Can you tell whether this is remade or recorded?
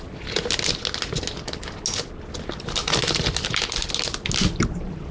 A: recorded